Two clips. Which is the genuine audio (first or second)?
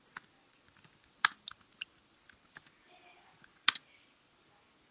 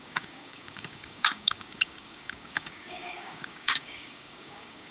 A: first